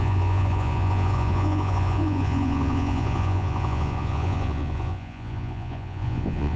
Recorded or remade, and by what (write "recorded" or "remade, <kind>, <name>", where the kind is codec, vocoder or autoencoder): remade, vocoder, Vocos